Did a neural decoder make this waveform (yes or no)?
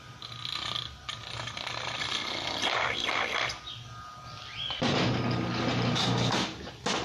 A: no